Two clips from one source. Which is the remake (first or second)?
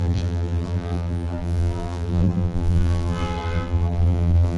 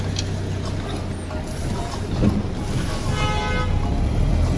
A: first